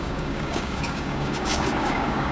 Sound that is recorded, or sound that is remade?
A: remade